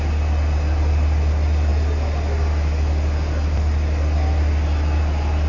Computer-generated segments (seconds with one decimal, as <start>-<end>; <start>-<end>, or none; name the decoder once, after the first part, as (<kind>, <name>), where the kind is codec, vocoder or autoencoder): none